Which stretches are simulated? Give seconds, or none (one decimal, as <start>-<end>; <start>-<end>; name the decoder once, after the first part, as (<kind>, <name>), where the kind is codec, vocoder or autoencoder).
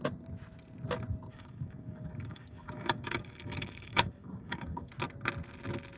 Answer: 1.3-4.9 (codec, DAC)